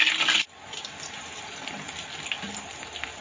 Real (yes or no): yes